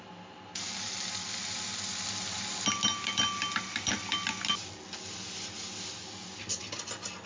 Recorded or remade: recorded